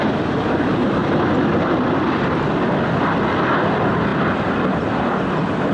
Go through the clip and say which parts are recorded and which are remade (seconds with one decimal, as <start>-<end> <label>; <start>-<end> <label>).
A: 0.0-5.7 remade